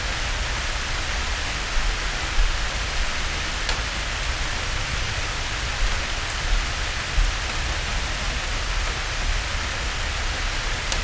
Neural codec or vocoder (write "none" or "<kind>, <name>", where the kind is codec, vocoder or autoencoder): none